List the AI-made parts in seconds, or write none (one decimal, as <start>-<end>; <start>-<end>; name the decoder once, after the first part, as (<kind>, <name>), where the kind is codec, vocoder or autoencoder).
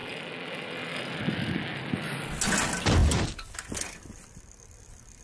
none